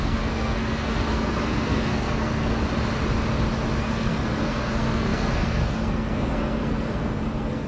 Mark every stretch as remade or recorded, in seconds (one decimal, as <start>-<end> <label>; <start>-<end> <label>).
0.0-2.5 remade; 2.5-3.8 recorded; 3.8-7.7 remade